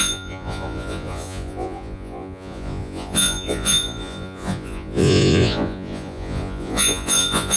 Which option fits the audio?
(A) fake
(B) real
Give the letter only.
A